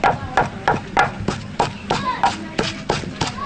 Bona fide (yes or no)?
yes